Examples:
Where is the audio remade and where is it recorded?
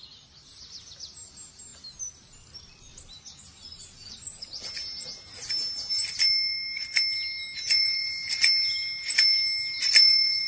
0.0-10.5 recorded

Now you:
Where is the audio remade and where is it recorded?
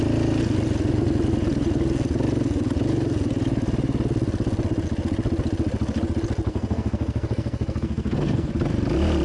0.0-6.5 recorded; 6.5-8.5 remade; 8.5-9.2 recorded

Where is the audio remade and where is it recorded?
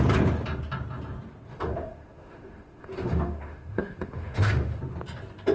0.0-1.5 recorded; 1.5-4.8 remade; 4.8-5.5 recorded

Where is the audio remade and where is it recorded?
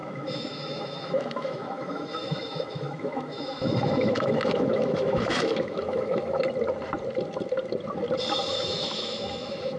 0.0-6.4 remade; 6.4-8.5 recorded; 8.5-9.8 remade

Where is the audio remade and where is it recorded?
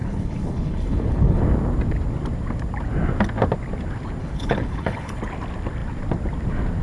0.0-1.4 remade; 1.4-4.2 recorded; 4.2-5.2 remade; 5.2-6.8 recorded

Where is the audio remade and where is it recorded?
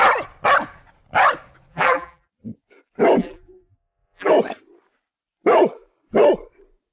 0.0-1.7 recorded; 1.7-2.3 remade; 2.3-3.2 recorded; 3.2-4.3 remade; 4.3-6.9 recorded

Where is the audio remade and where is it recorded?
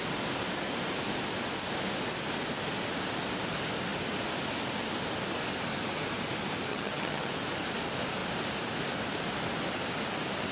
0.0-6.7 recorded; 6.7-7.3 remade; 7.3-10.5 recorded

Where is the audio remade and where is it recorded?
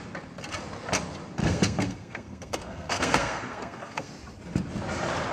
0.0-1.4 recorded; 1.4-4.1 remade; 4.1-5.3 recorded